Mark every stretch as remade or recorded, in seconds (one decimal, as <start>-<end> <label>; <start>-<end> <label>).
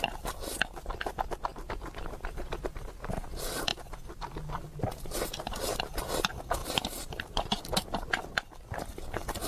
0.0-1.5 recorded; 1.5-2.9 remade; 2.9-3.7 recorded; 3.7-4.3 remade; 4.3-6.6 recorded; 6.6-8.0 remade; 8.0-9.5 recorded